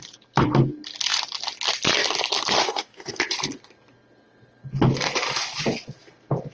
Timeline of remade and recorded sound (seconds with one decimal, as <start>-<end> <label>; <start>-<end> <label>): 0.0-2.6 recorded; 2.6-3.2 remade; 3.2-6.5 recorded